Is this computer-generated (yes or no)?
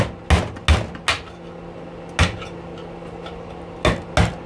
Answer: no